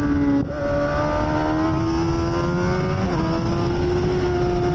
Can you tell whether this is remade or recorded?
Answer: recorded